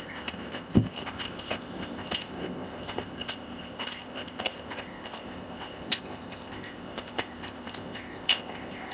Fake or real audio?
fake